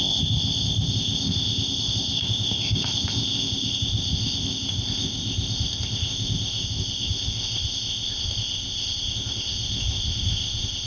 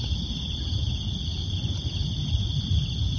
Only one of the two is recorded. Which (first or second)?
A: second